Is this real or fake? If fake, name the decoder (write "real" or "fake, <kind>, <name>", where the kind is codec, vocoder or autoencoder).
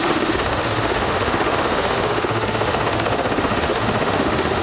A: fake, autoencoder, DAC-VAE